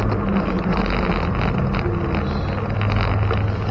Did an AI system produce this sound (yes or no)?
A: no